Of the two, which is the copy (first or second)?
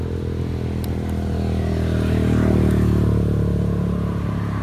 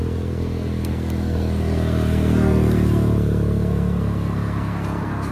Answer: second